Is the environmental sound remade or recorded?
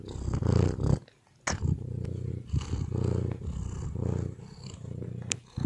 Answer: recorded